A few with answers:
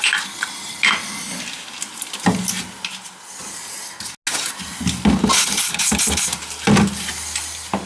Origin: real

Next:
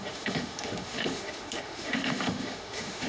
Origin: fake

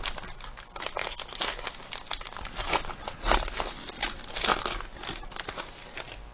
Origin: real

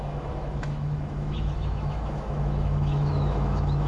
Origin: fake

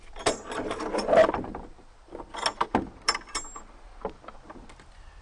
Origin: real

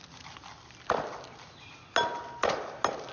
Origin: real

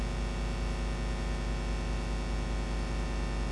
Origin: real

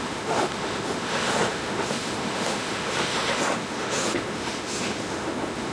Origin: fake